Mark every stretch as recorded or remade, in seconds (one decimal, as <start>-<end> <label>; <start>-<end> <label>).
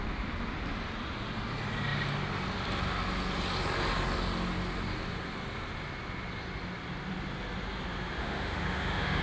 0.0-8.2 recorded; 8.2-9.2 remade